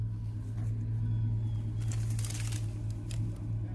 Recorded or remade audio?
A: recorded